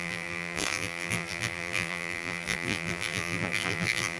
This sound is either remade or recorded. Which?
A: remade